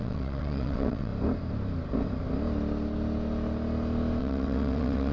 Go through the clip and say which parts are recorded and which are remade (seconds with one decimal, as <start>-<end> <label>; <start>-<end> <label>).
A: 0.0-1.1 remade; 1.1-4.2 recorded; 4.2-5.1 remade